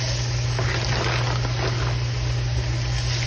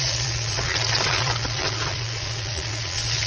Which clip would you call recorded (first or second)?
first